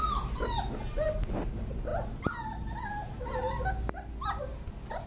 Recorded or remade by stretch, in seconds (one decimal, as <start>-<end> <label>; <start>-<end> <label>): 0.0-5.1 recorded